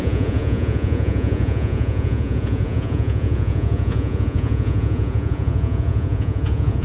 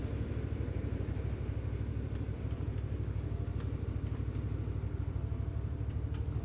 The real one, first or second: second